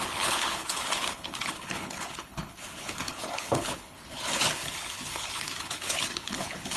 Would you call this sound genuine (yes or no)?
no